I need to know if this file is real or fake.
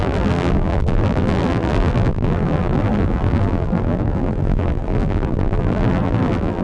fake